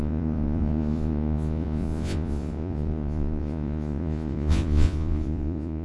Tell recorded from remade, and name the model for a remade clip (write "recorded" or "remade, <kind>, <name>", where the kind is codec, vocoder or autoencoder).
remade, vocoder, Vocos